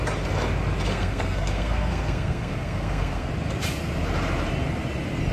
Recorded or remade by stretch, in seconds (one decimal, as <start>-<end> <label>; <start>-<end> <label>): 0.0-0.9 recorded; 0.9-3.3 remade; 3.3-5.3 recorded